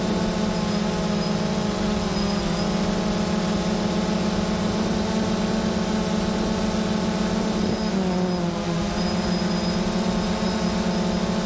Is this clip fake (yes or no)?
no